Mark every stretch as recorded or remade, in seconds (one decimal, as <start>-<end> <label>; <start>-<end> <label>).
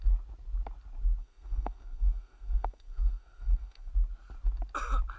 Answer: 0.0-1.2 recorded; 1.2-3.9 remade; 3.9-5.2 recorded